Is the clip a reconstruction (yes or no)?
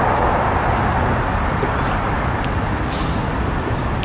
no